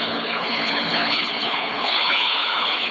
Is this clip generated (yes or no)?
yes